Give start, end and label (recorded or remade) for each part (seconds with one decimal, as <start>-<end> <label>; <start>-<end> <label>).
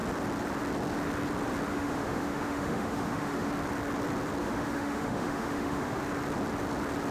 0.0-1.7 recorded; 1.7-3.5 remade; 3.5-4.4 recorded; 4.4-6.0 remade; 6.0-7.1 recorded